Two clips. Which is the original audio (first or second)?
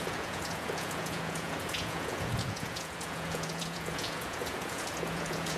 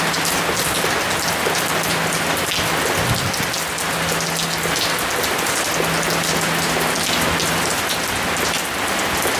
second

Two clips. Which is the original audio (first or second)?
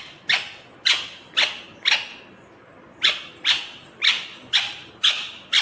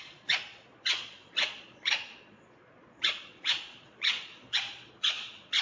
first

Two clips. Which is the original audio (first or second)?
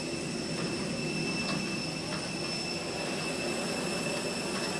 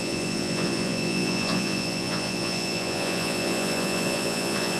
first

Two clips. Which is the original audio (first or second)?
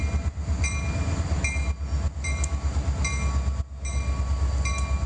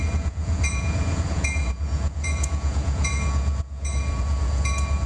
first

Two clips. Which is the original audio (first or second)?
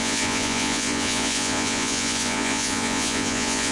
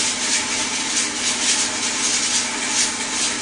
second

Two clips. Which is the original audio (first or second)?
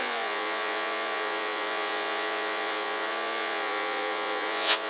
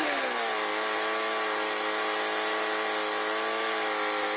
second